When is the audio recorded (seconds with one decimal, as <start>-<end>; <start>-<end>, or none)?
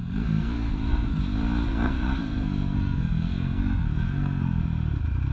1.2-1.7; 4.6-5.3